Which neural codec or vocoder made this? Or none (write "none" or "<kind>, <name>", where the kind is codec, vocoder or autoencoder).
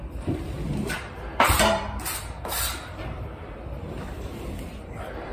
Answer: vocoder, BigVGAN v2